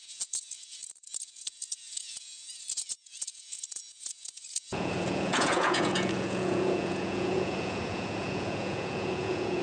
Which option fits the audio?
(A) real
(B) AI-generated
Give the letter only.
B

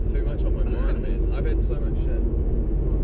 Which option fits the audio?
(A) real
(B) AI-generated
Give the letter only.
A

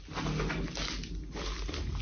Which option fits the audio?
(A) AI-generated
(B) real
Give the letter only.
B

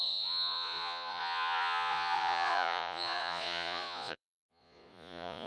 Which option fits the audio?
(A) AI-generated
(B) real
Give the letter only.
A